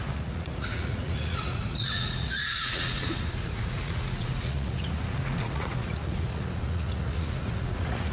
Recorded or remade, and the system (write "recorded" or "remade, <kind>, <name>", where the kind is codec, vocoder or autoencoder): remade, vocoder, Vocos